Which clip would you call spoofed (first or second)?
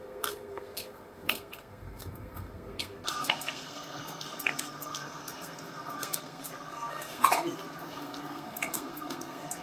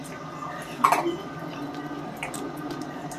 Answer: first